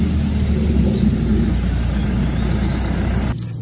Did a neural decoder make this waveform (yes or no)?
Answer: no